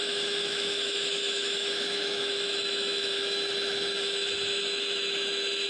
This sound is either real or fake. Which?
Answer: fake